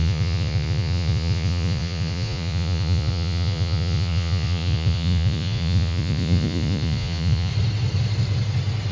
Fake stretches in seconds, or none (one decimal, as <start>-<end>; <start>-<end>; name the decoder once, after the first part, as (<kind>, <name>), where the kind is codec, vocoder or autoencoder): 0.0-7.5 (vocoder, Vocos)